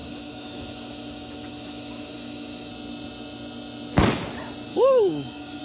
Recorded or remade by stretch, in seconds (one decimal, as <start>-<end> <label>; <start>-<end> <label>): 0.0-2.7 remade; 2.7-4.7 recorded; 4.7-5.6 remade